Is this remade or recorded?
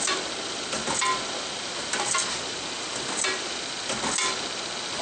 recorded